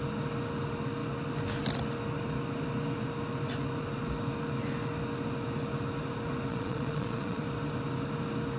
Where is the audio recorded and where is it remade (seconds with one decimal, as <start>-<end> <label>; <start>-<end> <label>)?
0.0-6.5 recorded; 6.5-7.4 remade; 7.4-8.6 recorded